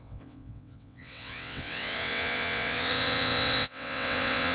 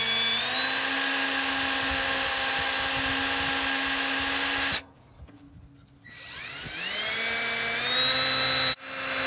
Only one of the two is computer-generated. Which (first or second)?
first